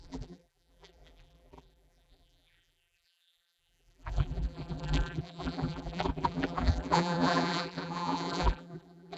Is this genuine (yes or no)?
no